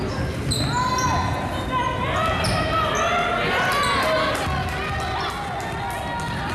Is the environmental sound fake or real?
real